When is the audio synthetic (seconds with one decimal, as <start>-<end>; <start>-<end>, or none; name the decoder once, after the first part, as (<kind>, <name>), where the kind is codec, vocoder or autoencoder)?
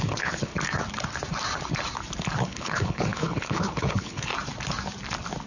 0.0-0.5 (codec, HILCodec); 2.4-4.3